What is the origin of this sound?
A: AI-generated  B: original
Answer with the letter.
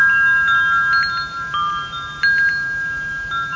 B